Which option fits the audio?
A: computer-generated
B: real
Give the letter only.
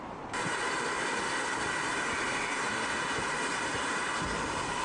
B